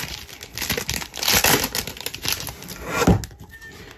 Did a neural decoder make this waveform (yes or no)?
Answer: no